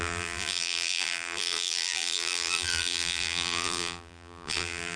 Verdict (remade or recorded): remade